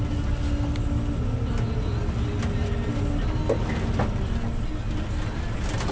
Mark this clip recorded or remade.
recorded